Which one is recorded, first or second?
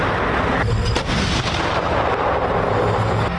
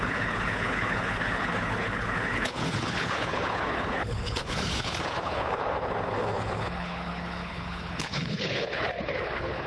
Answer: first